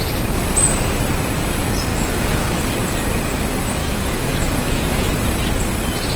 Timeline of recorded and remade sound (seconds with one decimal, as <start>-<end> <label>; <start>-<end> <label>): 0.0-1.9 recorded; 1.9-2.6 remade; 2.6-3.8 recorded; 3.8-5.1 remade; 5.1-6.2 recorded